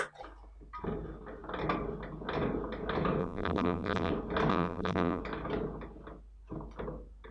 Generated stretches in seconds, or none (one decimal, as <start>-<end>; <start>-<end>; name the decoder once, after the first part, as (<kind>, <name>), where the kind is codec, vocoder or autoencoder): 3.2-4.1 (vocoder, BigVGAN v2); 4.5-5.2